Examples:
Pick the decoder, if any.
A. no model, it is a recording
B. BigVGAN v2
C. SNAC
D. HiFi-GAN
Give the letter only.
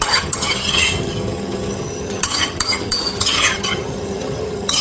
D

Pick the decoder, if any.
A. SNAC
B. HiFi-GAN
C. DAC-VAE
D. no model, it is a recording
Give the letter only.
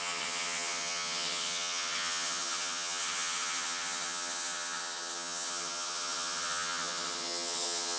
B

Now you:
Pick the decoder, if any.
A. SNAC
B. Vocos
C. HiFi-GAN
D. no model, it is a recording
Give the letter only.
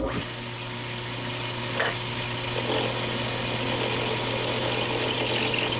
D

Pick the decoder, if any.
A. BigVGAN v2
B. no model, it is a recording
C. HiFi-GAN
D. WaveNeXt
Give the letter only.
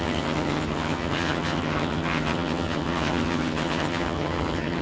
C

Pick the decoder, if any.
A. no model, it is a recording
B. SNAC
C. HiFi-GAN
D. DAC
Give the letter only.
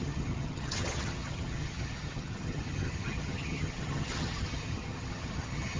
C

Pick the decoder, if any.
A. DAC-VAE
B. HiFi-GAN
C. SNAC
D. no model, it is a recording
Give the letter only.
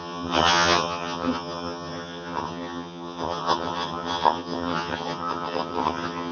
B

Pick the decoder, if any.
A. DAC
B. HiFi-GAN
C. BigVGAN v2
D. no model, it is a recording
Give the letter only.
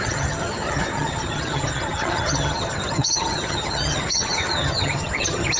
B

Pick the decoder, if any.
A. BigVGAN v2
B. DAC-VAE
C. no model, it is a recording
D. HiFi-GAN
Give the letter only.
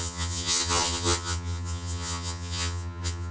D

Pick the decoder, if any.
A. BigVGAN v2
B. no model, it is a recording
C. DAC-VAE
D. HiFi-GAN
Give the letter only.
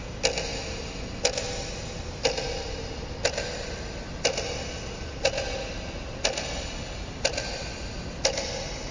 B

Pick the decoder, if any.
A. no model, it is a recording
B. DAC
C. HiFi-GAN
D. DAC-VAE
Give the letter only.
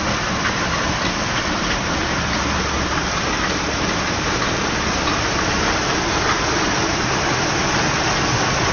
A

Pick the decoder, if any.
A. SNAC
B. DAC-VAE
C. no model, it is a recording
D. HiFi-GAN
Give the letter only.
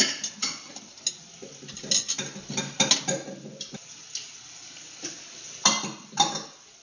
C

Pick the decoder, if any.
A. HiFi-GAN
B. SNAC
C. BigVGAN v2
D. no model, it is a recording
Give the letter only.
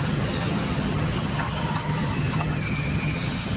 A